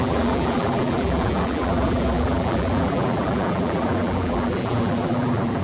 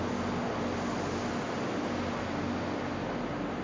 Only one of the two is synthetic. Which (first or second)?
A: first